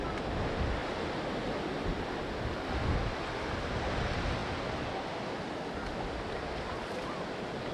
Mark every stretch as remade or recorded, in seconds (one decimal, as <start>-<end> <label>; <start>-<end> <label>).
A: 0.0-7.7 recorded